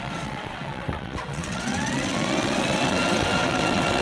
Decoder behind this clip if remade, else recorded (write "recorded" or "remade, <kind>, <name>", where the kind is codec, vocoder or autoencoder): remade, vocoder, WaveNeXt